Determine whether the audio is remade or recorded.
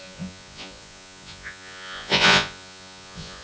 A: remade